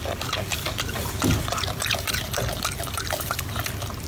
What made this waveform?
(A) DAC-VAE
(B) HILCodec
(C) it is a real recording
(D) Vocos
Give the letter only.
C